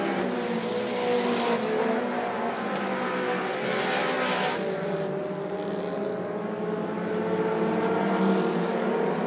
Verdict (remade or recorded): recorded